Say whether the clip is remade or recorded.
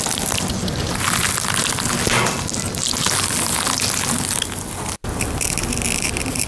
recorded